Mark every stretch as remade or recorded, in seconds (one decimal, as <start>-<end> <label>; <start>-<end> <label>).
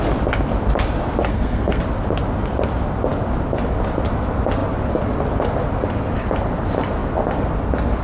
0.0-1.3 recorded; 1.3-1.8 remade; 1.8-8.0 recorded